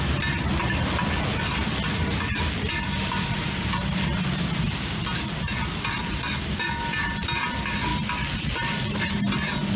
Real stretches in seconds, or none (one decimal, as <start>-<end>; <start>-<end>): 0.0-9.8